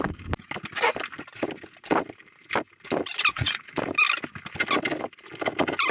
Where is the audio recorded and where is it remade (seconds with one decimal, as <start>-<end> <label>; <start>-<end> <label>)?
0.0-3.3 recorded; 3.3-3.8 remade; 3.8-5.9 recorded